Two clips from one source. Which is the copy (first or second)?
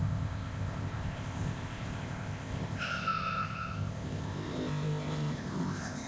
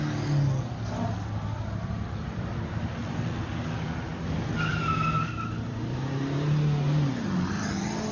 first